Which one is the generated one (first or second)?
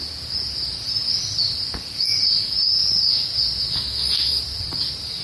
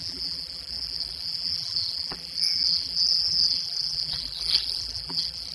second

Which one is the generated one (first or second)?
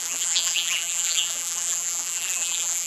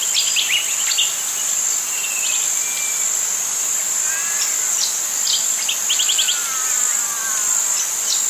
first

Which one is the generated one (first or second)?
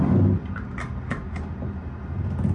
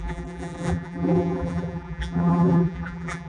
second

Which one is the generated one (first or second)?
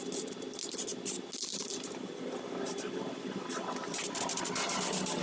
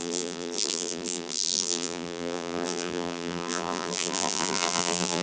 second